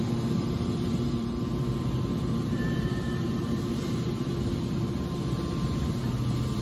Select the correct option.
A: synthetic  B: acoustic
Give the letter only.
A